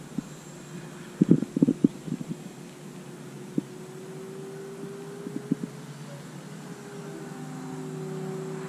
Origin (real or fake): real